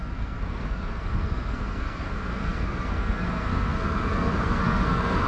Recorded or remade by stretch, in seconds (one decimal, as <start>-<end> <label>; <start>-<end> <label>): 0.0-5.3 remade